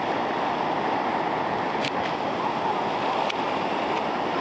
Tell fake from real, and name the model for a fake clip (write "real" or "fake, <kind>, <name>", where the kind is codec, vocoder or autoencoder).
real